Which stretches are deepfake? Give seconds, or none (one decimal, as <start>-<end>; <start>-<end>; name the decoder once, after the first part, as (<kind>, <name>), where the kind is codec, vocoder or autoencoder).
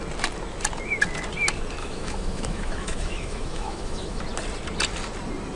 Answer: 1.8-4.2 (autoencoder, DAC-VAE)